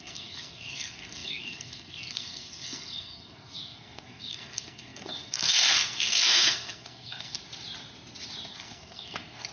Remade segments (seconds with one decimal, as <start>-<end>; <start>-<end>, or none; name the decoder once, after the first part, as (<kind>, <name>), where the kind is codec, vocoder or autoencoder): 0.0-7.4 (codec, SNAC); 8.5-9.5